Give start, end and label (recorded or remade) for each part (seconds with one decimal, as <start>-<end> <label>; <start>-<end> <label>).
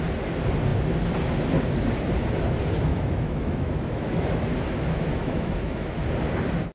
0.0-2.9 recorded; 2.9-4.5 remade; 4.5-5.1 recorded; 5.1-6.1 remade; 6.1-6.7 recorded